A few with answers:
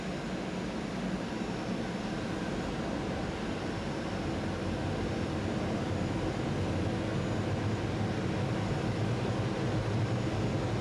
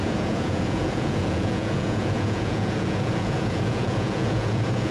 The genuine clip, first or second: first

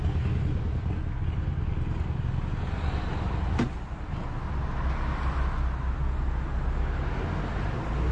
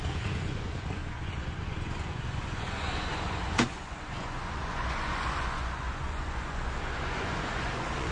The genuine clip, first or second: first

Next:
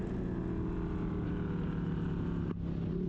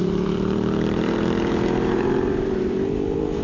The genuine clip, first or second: first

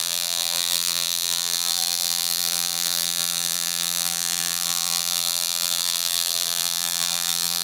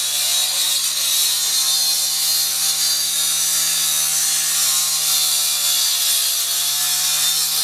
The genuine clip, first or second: second